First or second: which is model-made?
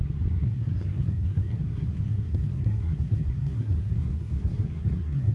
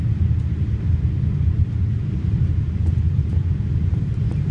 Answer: first